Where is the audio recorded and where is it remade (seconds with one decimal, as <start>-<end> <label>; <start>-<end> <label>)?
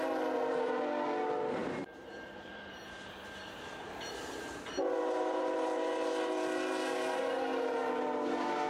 0.0-8.7 remade